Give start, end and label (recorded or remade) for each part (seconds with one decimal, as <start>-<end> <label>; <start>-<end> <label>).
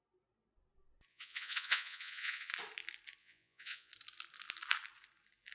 0.0-1.1 recorded; 1.1-2.5 remade; 2.5-3.2 recorded; 3.2-3.9 remade; 3.9-5.5 recorded